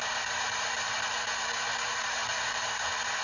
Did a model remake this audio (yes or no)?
no